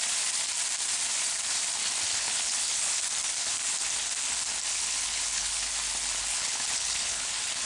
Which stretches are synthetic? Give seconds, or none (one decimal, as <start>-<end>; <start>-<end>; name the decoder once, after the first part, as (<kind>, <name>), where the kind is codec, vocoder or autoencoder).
2.1-3.0 (codec, HILCodec); 4.7-5.7; 6.3-7.3